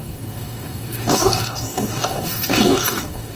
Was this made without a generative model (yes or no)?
no